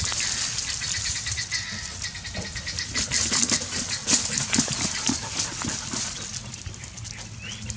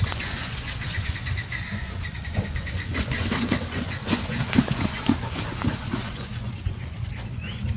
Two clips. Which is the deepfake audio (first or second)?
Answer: second